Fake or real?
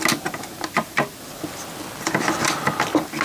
real